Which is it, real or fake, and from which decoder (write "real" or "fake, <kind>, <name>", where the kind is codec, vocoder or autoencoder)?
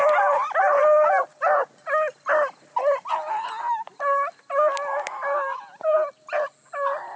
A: real